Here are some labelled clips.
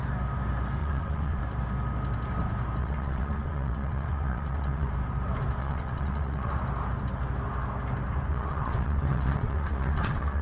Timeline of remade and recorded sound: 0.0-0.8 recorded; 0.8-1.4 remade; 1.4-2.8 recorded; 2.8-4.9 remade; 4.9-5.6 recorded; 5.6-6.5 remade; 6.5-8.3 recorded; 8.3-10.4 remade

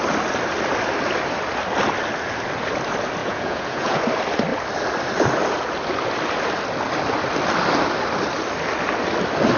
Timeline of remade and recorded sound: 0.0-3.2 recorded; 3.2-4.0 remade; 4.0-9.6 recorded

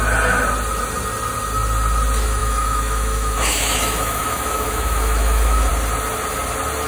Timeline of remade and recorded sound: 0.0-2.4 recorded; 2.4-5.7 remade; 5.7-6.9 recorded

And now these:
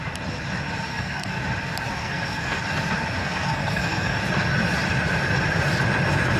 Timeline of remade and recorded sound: 0.0-0.9 recorded; 0.9-1.4 remade; 1.4-2.0 recorded; 2.0-2.6 remade; 2.6-3.2 recorded; 3.2-4.2 remade; 4.2-6.4 recorded

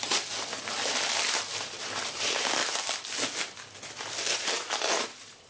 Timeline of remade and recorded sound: 0.0-2.6 remade; 2.6-3.8 recorded; 3.8-5.5 remade

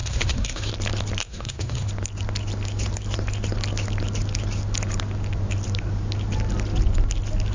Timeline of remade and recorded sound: 0.0-0.7 remade; 0.7-1.2 recorded; 1.2-1.9 remade; 1.9-7.5 recorded